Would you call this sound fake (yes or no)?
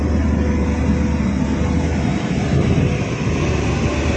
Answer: no